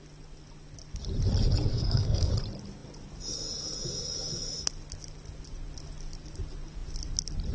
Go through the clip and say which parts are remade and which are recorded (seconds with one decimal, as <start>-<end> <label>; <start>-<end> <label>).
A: 0.0-1.7 recorded; 1.7-2.3 remade; 2.3-7.5 recorded